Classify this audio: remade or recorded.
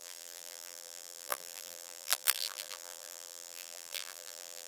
remade